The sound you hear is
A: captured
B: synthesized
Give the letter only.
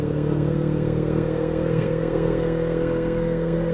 B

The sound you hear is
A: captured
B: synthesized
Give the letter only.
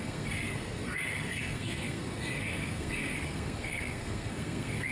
B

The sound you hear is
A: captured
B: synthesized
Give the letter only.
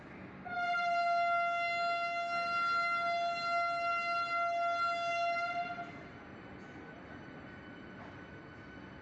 A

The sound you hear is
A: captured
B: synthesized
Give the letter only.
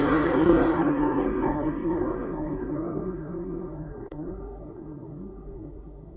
B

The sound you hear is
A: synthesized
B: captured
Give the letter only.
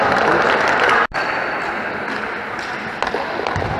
B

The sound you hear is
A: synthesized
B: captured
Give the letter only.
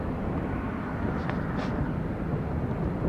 B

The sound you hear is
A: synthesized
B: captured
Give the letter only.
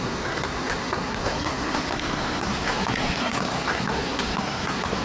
A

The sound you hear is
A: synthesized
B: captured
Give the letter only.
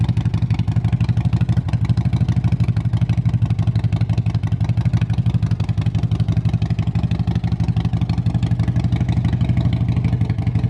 B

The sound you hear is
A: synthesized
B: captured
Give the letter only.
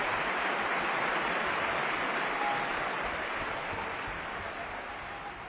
B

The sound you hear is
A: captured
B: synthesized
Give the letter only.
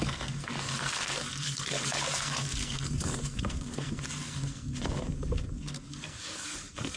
B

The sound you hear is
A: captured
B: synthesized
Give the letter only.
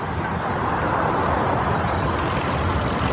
A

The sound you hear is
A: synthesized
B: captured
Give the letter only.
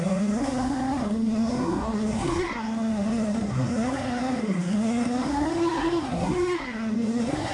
A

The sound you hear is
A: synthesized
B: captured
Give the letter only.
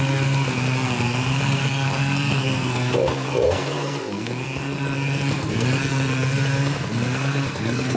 A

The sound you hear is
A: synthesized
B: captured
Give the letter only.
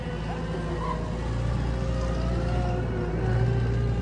B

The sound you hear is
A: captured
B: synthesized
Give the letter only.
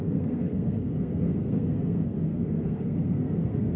B